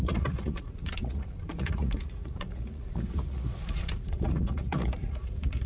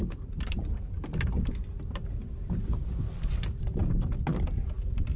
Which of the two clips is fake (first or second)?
first